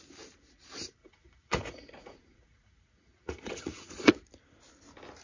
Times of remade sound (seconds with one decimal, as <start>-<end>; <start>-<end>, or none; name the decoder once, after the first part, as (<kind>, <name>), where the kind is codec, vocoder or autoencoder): 1.0-4.1 (vocoder, Vocos)